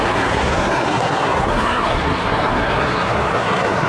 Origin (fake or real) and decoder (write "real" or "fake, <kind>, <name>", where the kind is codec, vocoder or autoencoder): fake, codec, SNAC